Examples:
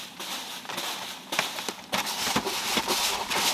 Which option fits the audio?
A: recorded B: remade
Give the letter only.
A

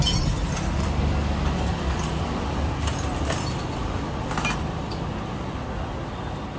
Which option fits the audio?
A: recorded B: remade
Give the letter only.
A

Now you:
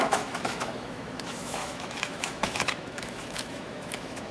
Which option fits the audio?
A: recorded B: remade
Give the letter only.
B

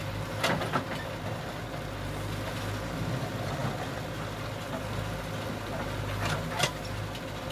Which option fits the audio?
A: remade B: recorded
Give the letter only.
B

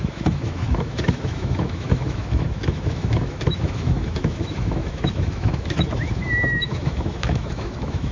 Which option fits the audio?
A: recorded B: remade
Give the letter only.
B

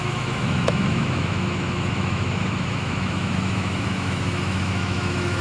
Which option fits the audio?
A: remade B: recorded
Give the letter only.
A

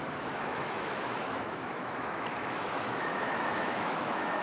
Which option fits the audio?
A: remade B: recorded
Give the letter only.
A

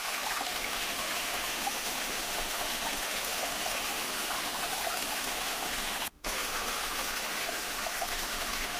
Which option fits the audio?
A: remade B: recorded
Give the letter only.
A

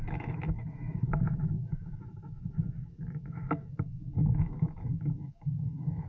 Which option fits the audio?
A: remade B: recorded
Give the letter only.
A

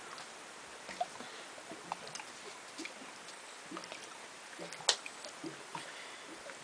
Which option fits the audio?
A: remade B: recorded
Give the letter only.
B